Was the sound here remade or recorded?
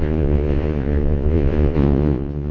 remade